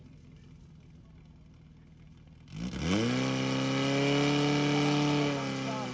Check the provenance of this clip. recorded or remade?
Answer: recorded